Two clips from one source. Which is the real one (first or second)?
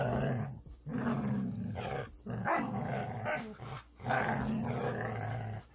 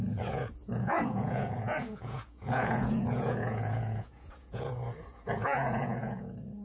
first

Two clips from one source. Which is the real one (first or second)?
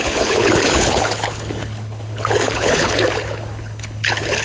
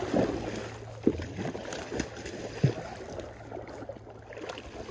second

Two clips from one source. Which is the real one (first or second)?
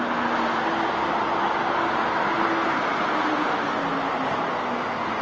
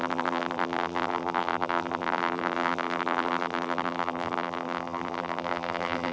first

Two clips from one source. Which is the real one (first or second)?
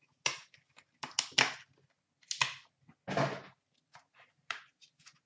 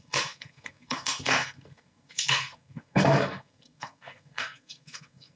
first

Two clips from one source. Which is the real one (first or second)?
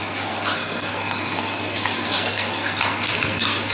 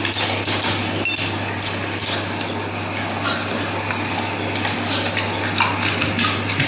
second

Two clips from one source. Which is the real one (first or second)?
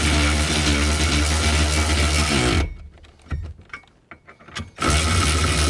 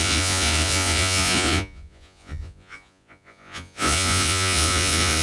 first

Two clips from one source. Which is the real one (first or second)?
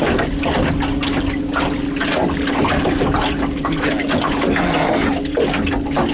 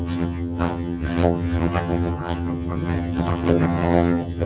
first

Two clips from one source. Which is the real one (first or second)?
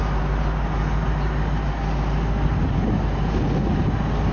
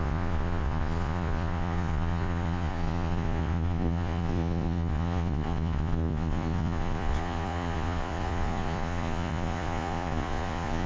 first